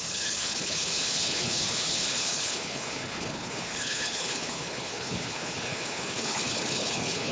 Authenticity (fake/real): fake